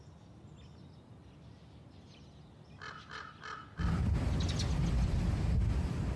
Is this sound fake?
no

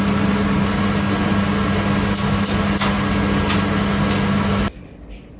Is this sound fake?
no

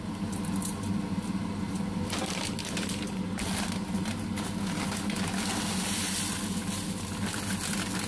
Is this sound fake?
no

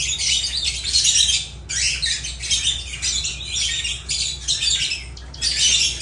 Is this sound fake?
no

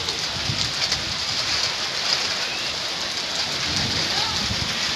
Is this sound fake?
no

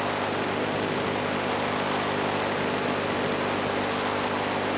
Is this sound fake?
no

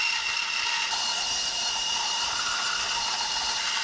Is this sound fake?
no